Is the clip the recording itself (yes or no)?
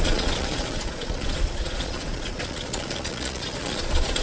no